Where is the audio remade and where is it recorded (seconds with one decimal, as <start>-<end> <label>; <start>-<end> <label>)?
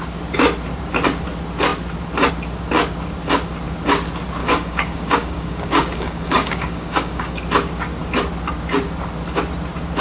0.0-4.4 recorded; 4.4-7.4 remade; 7.4-10.0 recorded